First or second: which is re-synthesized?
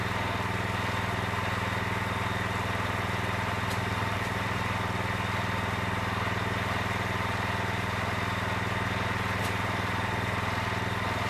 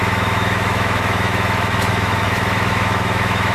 second